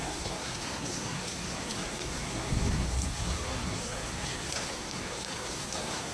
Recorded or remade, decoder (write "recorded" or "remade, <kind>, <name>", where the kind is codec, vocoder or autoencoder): remade, codec, SNAC